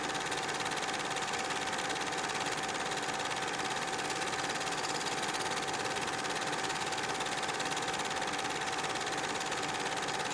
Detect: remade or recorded recorded